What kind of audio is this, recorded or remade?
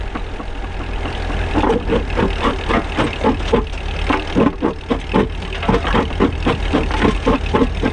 recorded